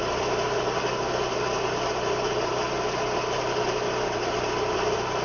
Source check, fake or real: real